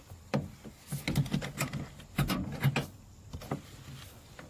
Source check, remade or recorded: recorded